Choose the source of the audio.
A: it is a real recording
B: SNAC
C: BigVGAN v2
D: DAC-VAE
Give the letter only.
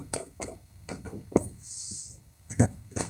B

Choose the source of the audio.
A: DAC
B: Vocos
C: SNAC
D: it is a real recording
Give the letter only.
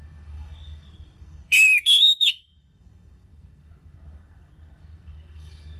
C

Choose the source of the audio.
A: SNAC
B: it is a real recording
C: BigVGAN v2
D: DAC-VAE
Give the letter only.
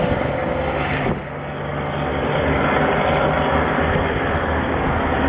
B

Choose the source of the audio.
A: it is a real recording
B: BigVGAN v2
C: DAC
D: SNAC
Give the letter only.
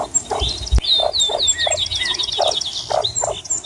A